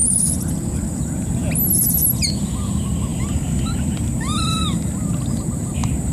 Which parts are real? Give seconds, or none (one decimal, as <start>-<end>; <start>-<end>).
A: 0.0-6.1